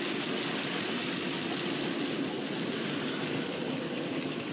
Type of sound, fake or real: real